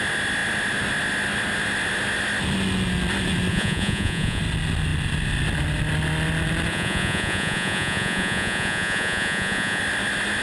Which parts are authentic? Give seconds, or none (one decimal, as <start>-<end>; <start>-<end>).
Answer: 0.0-3.5; 4.4-6.7; 9.8-10.4